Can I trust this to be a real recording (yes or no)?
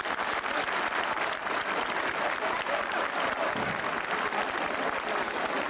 yes